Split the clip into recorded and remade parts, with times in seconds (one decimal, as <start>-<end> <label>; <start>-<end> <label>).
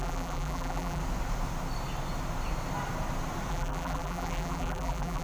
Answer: 0.0-1.0 remade; 1.0-3.5 recorded; 3.5-5.2 remade